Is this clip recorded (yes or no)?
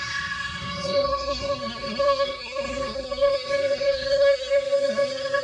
no